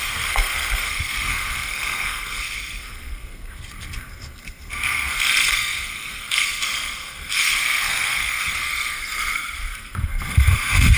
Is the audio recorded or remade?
remade